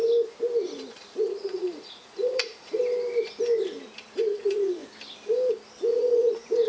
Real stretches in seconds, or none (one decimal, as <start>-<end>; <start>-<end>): 0.0-1.4; 2.8-5.9